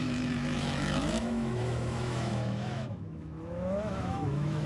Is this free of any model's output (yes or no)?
no